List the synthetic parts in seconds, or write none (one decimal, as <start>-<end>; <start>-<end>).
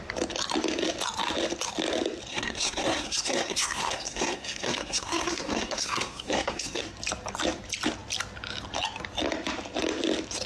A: 2.3-6.8